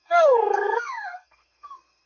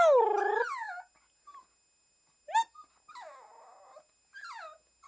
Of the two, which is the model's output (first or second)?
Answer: first